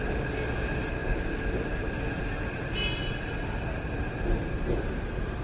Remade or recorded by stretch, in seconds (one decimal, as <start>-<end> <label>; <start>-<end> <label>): 0.0-5.4 recorded